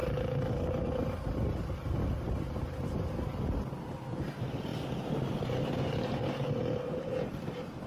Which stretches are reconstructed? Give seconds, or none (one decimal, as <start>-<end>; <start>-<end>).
none